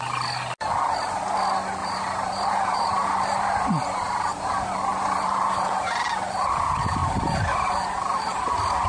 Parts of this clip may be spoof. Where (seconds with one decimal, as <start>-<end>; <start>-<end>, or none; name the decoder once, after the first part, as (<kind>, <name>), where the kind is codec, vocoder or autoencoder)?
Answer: 1.8-4.5 (vocoder, BigVGAN v2); 4.9-6.0; 7.0-8.5